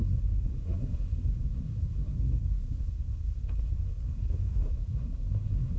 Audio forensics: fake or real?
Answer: fake